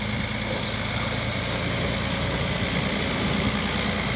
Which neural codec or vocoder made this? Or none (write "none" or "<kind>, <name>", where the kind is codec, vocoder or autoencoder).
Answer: none